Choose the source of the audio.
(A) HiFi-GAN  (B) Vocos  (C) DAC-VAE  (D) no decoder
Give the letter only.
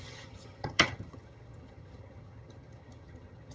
A